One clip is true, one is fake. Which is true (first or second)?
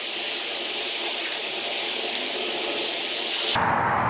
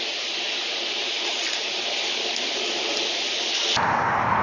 first